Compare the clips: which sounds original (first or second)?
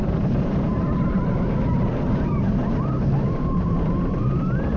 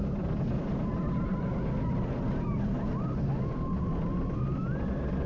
second